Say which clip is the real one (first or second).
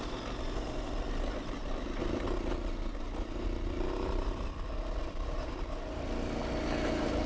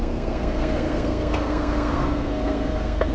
first